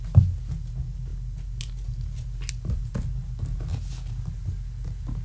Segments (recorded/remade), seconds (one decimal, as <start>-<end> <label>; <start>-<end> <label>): 0.0-5.2 recorded